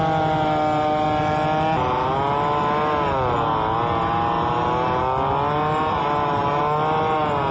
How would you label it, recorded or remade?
recorded